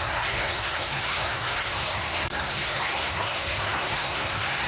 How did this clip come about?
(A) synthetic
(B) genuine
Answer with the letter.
A